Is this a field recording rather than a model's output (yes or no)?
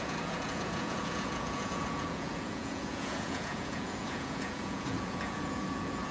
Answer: no